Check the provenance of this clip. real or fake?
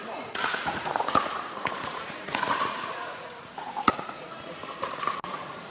fake